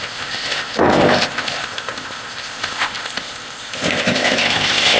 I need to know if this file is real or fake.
fake